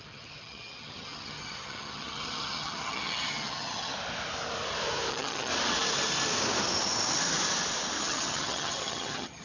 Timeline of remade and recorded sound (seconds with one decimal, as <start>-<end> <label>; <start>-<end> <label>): 0.0-3.9 remade; 3.9-5.1 recorded; 5.1-5.5 remade; 5.5-8.0 recorded; 8.0-9.4 remade